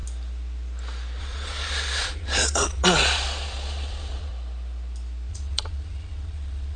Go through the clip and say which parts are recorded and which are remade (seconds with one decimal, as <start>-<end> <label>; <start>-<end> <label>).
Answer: 0.0-1.2 recorded; 1.2-4.3 remade; 4.3-5.3 recorded; 5.3-6.8 remade